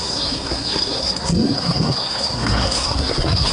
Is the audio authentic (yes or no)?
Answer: no